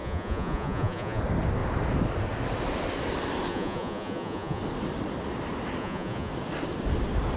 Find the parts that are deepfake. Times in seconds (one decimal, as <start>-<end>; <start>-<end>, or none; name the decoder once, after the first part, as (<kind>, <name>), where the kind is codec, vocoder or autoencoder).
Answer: 0.0-1.2 (vocoder, Vocos); 3.5-4.6; 5.8-6.3